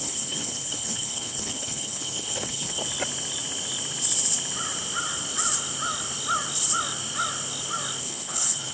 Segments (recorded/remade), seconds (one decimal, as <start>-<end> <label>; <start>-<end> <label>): 0.0-2.8 remade; 2.8-8.0 recorded; 8.0-8.7 remade